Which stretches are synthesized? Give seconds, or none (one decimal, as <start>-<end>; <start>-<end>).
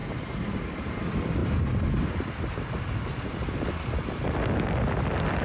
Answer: 0.8-1.4; 3.1-5.4